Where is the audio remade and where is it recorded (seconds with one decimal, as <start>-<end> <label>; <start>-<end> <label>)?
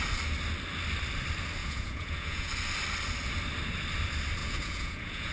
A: 0.0-1.6 recorded; 1.6-2.5 remade; 2.5-4.4 recorded; 4.4-5.3 remade